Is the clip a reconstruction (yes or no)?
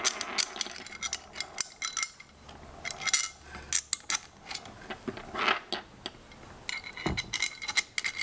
no